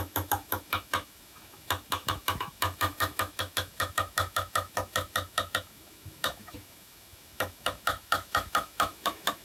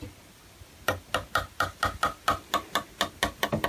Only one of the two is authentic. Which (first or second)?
second